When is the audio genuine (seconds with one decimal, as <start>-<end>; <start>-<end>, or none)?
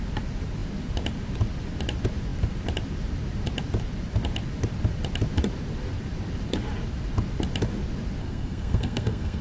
0.0-8.2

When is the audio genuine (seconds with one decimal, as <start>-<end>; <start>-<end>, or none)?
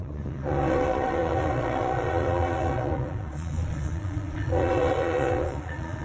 none